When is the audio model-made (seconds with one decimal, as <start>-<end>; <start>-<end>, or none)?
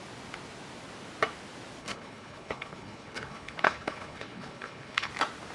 1.8-5.1